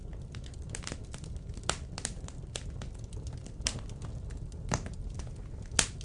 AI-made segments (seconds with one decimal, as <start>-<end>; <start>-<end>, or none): none